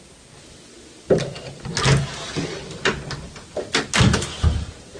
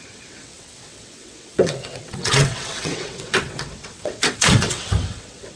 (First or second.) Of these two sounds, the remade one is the second